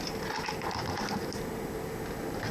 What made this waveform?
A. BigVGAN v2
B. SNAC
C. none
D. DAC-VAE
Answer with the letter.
C